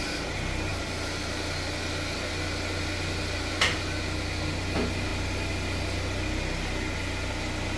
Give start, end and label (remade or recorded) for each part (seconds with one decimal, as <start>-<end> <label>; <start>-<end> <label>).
0.0-7.8 recorded